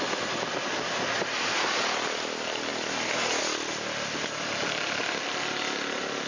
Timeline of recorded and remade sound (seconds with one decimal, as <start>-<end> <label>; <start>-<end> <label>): 0.0-6.3 recorded